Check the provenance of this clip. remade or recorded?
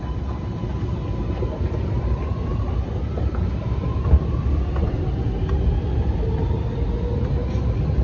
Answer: recorded